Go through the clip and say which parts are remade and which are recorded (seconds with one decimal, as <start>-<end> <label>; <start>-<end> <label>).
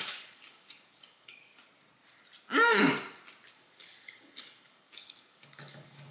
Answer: 0.0-1.5 remade; 1.5-3.5 recorded; 3.5-6.1 remade